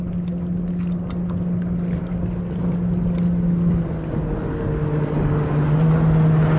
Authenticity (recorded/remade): recorded